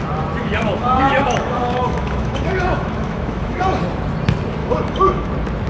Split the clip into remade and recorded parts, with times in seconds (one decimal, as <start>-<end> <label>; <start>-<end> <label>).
0.0-0.4 recorded; 0.4-3.8 remade; 3.8-4.6 recorded; 4.6-5.3 remade; 5.3-5.7 recorded